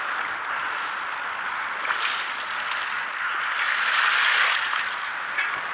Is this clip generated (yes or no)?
no